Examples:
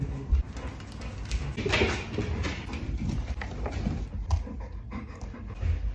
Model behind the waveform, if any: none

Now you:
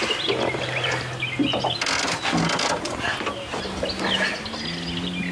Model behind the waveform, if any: none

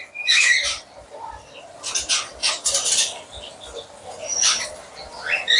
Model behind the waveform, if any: vocoder, BigVGAN v2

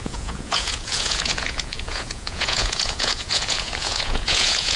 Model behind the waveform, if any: vocoder, Vocos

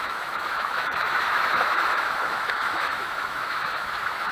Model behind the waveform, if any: autoencoder, DAC-VAE